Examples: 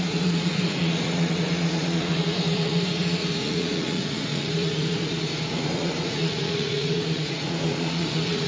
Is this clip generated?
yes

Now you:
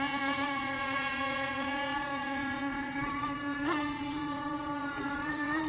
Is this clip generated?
yes